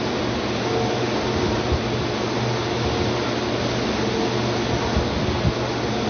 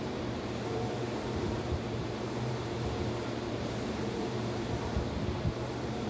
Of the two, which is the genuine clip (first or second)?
first